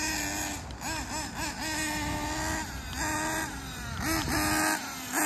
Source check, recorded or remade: recorded